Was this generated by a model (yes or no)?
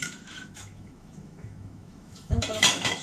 yes